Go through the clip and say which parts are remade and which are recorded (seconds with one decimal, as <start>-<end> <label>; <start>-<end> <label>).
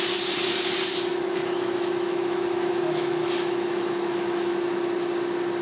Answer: 0.0-1.1 recorded; 1.1-4.5 remade; 4.5-5.6 recorded